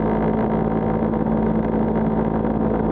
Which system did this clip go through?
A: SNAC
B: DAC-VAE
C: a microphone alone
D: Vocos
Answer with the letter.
C